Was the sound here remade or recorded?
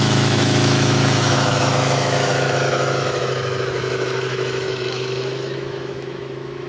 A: remade